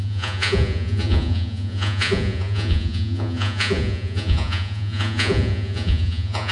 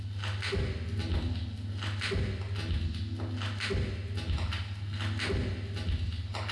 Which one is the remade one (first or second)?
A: first